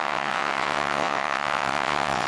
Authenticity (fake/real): fake